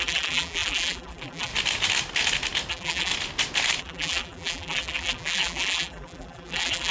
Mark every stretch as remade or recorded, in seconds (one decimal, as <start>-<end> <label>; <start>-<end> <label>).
0.0-1.5 remade; 1.5-2.7 recorded; 2.7-3.1 remade; 3.1-3.8 recorded; 3.8-6.9 remade